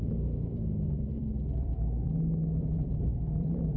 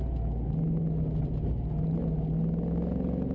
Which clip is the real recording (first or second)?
second